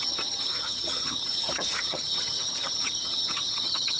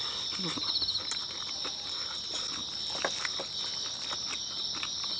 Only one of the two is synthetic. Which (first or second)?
first